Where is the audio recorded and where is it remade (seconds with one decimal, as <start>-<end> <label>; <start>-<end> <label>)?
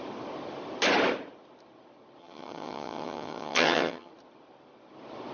0.0-2.2 recorded; 2.2-4.1 remade; 4.1-5.3 recorded